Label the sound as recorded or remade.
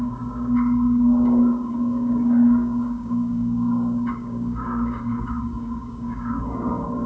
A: remade